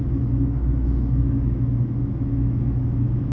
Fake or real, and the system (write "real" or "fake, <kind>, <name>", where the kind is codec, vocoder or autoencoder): fake, autoencoder, DAC-VAE